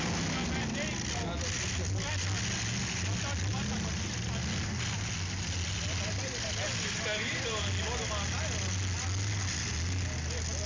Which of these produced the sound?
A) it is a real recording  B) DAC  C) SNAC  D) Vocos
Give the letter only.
A